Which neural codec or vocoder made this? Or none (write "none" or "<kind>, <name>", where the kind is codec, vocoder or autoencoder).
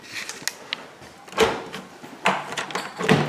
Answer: none